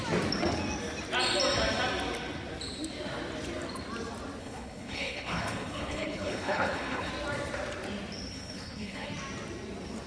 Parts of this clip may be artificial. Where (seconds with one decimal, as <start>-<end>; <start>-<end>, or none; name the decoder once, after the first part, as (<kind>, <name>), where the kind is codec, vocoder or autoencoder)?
4.4-7.1 (codec, HILCodec); 8.3-9.1